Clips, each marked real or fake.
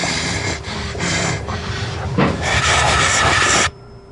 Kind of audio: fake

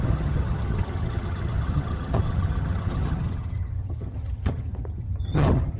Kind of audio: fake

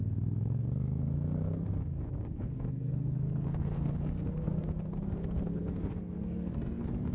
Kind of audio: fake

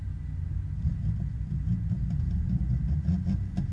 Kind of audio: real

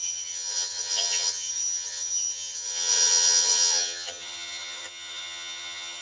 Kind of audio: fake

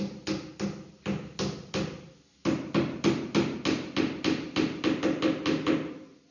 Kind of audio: real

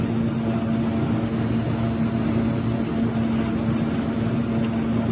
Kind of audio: real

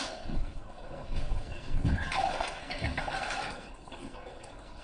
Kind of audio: fake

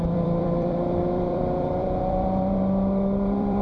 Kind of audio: fake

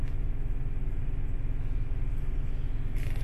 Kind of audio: real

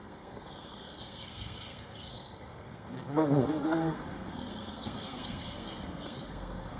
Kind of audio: fake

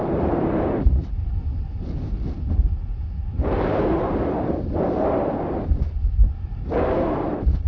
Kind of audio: real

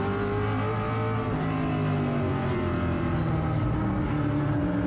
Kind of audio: real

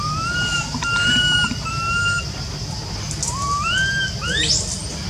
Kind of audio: real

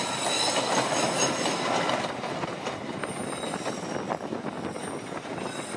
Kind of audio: real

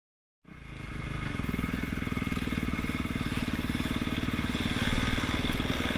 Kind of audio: real